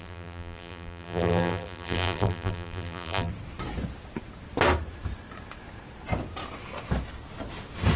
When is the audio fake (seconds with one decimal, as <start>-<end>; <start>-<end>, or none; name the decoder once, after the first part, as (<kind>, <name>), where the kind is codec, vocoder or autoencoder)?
0.0-3.3 (vocoder, BigVGAN v2)